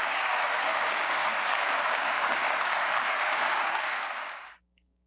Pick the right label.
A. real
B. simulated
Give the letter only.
B